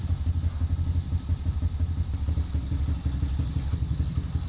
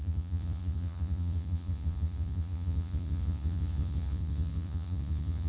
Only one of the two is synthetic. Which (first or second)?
second